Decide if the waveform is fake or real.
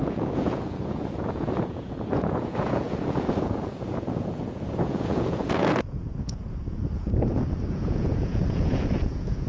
fake